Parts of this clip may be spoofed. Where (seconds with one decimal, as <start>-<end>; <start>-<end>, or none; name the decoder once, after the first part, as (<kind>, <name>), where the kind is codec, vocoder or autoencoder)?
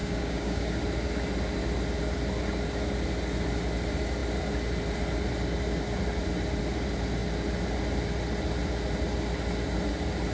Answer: 0.0-0.8 (codec, DAC)